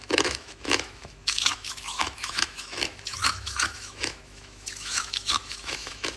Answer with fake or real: fake